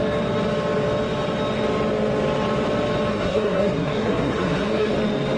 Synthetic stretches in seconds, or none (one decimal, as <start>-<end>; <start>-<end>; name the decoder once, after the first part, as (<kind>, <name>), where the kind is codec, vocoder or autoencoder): 3.1-4.9 (codec, SNAC)